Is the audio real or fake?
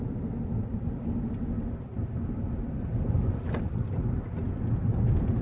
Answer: real